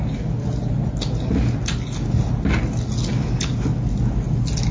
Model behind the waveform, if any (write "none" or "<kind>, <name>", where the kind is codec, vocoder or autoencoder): none